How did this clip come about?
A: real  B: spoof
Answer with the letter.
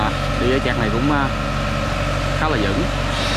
A